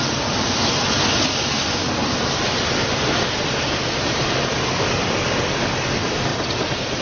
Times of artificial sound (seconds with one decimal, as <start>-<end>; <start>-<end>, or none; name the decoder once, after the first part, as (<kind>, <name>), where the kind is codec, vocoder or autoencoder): none